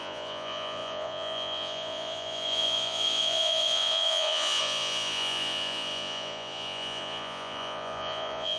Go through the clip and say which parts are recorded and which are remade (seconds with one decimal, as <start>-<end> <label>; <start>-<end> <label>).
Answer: 0.0-8.6 remade